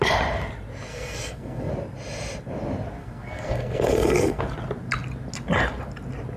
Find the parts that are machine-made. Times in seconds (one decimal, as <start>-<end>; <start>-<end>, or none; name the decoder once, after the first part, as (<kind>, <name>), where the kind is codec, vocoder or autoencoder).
0.9-1.7 (codec, SNAC); 3.0-4.4